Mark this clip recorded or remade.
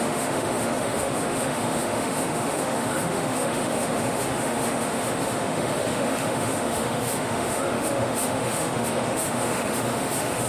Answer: remade